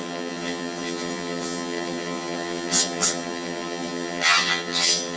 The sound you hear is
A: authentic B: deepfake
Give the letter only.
B